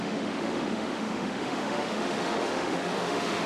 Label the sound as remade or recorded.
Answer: remade